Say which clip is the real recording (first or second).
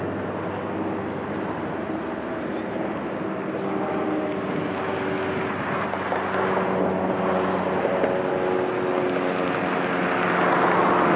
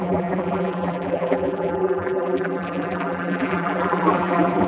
first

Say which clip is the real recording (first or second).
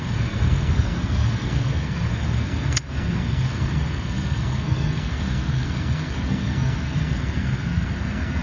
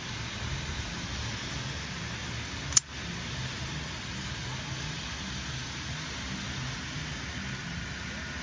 second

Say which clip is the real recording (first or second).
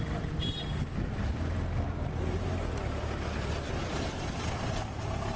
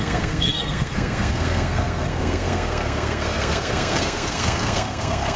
first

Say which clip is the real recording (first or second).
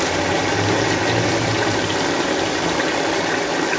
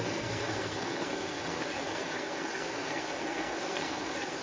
first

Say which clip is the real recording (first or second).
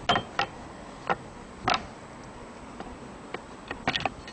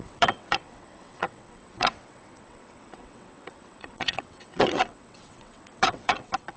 first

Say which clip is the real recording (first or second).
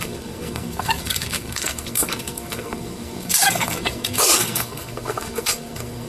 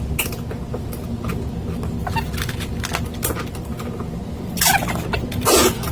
second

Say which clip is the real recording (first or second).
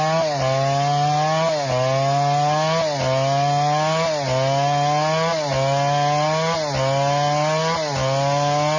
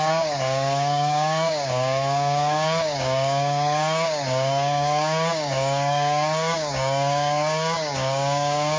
first